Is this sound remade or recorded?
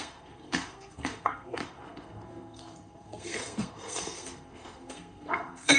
remade